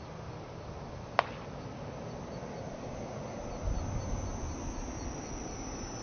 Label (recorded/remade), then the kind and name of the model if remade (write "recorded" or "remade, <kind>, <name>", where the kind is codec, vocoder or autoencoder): recorded